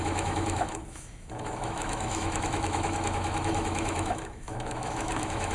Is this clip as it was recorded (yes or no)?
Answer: no